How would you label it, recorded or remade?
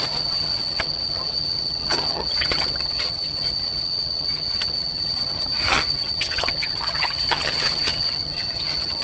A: remade